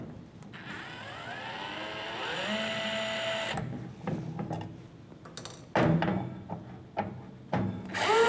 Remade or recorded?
recorded